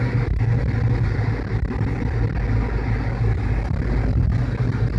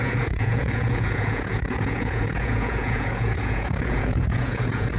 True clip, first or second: first